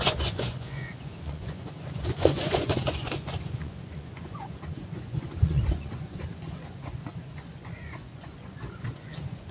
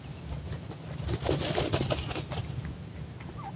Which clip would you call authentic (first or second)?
second